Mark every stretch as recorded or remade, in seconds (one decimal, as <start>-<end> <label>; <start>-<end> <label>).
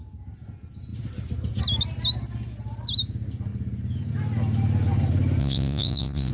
0.0-5.4 recorded; 5.4-6.3 remade